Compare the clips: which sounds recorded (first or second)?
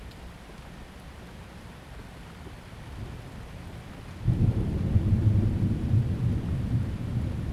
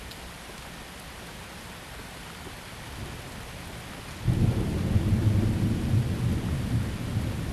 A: second